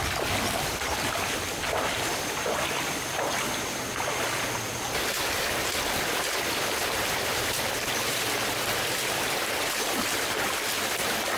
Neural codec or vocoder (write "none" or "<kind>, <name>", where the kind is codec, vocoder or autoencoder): vocoder, BigVGAN v2